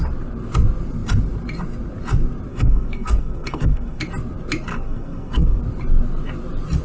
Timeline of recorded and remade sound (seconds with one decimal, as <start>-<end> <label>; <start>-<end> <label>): 0.0-2.5 recorded; 2.5-4.0 remade; 4.0-4.7 recorded; 4.7-5.6 remade; 5.6-6.8 recorded